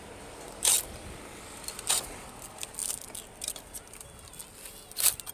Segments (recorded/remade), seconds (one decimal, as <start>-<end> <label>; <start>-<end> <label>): 0.0-5.3 recorded